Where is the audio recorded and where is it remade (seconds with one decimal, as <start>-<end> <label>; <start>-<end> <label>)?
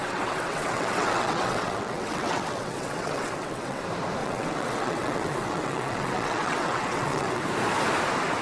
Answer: 0.0-3.8 remade; 3.8-4.2 recorded; 4.2-7.4 remade; 7.4-8.4 recorded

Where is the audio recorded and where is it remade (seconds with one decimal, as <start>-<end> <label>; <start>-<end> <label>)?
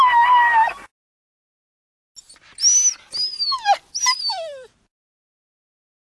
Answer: 0.0-6.1 recorded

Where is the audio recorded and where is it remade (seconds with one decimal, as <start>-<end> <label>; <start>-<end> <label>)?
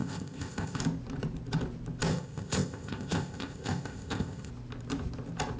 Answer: 0.0-0.8 remade; 0.8-2.1 recorded; 2.1-4.5 remade; 4.5-5.6 recorded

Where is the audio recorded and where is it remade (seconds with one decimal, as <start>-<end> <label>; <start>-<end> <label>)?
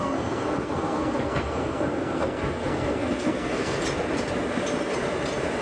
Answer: 0.0-3.8 remade; 3.8-5.6 recorded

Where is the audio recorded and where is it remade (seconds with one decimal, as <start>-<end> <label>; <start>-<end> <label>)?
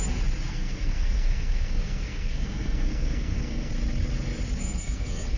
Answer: 0.0-0.5 recorded; 0.5-3.7 remade; 3.7-4.6 recorded; 4.6-5.4 remade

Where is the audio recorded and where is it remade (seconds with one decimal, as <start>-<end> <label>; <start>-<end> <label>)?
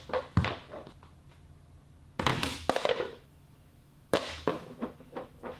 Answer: 0.0-2.3 recorded; 2.3-5.6 remade